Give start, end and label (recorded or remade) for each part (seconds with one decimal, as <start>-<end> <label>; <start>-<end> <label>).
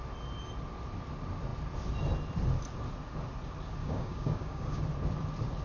0.0-3.8 recorded; 3.8-4.8 remade; 4.8-5.6 recorded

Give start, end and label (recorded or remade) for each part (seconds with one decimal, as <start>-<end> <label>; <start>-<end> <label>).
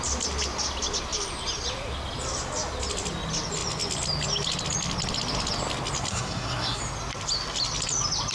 0.0-6.1 recorded; 6.1-6.8 remade; 6.8-8.3 recorded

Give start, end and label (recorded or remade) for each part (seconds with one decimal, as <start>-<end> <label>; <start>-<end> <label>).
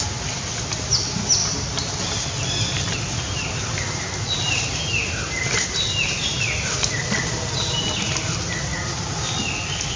0.0-10.0 recorded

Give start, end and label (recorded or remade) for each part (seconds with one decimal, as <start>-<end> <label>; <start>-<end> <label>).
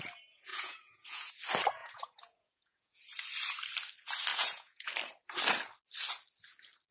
0.0-0.5 recorded; 0.5-1.3 remade; 1.3-1.8 recorded; 1.8-3.0 remade; 3.0-4.3 recorded; 4.3-4.9 remade; 4.9-6.9 recorded